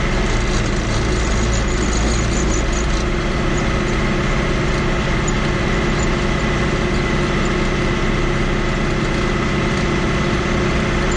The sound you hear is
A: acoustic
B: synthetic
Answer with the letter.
A